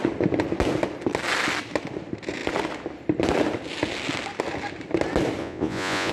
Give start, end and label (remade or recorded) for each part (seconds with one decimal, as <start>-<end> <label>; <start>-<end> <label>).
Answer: 0.0-5.4 recorded; 5.4-6.1 remade